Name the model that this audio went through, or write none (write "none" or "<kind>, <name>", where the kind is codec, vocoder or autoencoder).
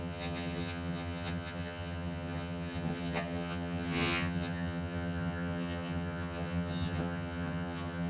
vocoder, HiFi-GAN